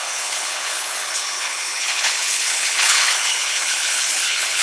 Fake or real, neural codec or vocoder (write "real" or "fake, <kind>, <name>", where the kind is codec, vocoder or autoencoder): fake, codec, HILCodec